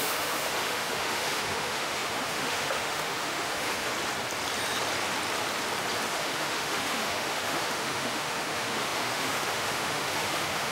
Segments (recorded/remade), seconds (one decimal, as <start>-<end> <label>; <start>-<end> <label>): 0.0-3.9 remade; 3.9-6.1 recorded; 6.1-10.7 remade